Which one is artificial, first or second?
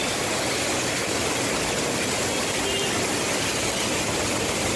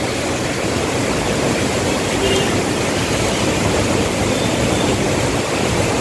second